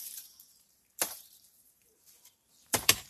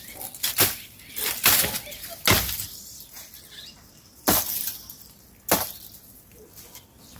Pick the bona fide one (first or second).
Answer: second